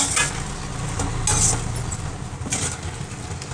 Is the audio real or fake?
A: real